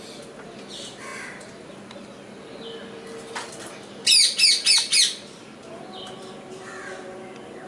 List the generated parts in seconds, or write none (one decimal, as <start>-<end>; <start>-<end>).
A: none